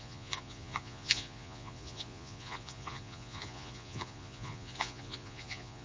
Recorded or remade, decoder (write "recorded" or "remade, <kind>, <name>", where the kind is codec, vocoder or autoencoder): remade, vocoder, Vocos